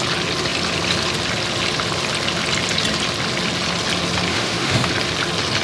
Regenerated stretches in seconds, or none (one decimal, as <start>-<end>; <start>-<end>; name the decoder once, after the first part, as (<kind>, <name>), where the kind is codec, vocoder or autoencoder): 4.3-4.9 (autoencoder, DAC-VAE)